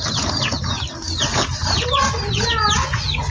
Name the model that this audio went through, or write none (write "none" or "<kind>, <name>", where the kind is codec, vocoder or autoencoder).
none